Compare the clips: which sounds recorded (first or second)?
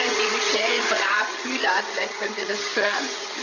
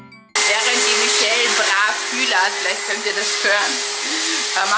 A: second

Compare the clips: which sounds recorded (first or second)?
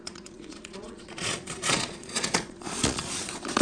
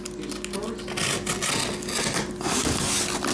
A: second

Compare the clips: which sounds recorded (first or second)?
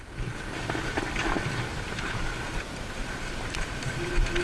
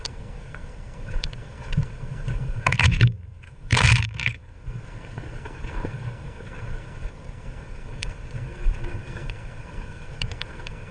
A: first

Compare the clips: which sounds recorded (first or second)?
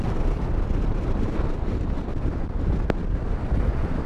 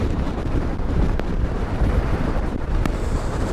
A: first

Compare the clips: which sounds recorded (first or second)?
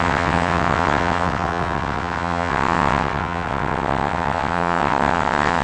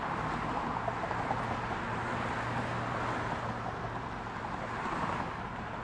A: second